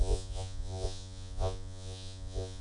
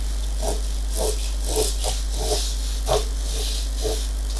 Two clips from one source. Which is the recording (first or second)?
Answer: second